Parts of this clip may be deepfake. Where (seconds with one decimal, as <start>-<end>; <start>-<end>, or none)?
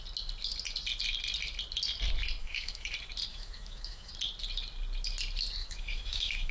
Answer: 2.4-2.9; 3.3-4.1; 5.6-6.5